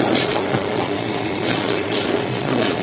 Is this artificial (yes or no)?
yes